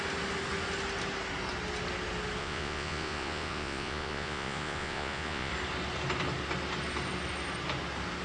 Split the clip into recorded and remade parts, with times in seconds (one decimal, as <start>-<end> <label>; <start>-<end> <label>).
0.0-2.4 recorded; 2.4-5.5 remade; 5.5-8.2 recorded